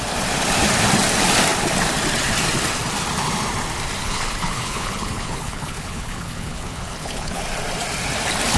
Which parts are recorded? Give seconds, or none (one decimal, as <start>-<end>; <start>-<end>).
0.0-4.0; 7.4-8.6